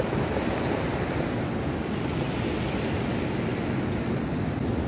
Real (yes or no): yes